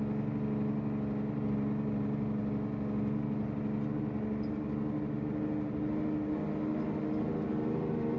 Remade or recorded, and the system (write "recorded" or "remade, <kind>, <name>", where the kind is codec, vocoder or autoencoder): recorded